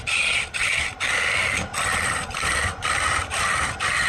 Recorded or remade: recorded